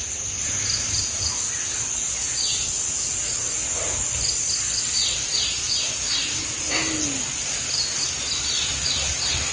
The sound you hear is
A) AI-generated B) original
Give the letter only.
B